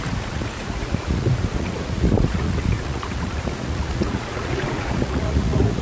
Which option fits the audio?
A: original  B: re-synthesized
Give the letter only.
B